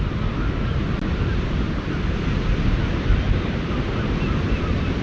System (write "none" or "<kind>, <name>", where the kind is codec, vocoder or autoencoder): none